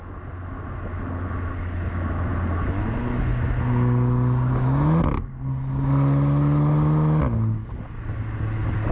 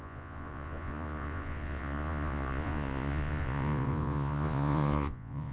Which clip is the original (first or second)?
first